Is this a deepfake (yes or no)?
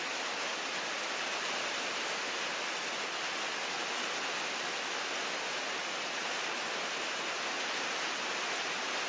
no